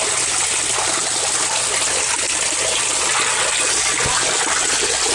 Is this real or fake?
real